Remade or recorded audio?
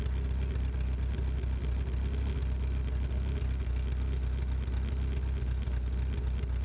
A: recorded